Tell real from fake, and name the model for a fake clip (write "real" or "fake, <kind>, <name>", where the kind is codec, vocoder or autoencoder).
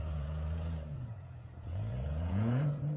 fake, vocoder, Vocos